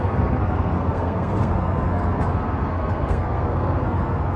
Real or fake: fake